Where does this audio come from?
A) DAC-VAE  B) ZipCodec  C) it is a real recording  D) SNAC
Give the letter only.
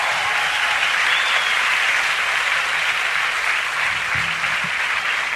C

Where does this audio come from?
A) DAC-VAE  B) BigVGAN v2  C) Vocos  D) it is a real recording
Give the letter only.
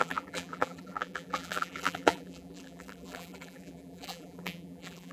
B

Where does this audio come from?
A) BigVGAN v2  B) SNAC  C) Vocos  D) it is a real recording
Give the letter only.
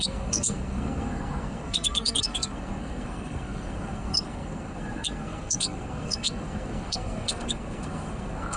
B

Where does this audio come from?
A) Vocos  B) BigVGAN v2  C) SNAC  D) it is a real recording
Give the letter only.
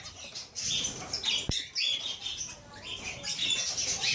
D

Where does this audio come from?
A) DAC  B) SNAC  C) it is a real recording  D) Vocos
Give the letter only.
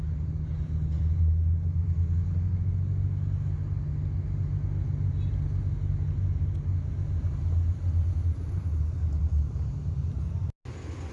C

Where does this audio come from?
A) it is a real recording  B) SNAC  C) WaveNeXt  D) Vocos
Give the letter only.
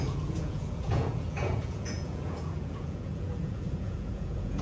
D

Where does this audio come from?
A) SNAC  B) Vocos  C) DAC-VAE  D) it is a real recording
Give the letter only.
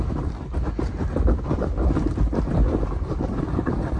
D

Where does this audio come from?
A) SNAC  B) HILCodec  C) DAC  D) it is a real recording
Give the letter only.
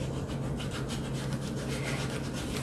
D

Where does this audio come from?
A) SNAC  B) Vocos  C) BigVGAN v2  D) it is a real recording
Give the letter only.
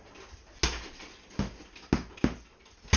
D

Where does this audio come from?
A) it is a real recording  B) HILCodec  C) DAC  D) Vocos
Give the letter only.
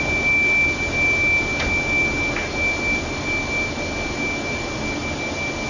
A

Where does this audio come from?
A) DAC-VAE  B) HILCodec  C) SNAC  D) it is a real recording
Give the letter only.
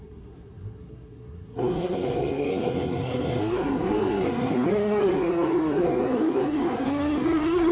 C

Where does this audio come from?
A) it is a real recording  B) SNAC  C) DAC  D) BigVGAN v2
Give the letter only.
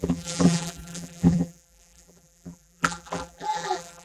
D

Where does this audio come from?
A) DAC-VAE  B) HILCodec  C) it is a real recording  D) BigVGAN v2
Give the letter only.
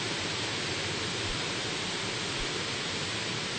C